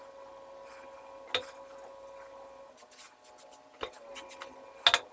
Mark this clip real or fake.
real